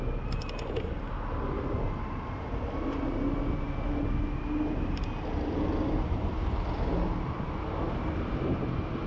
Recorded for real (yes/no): yes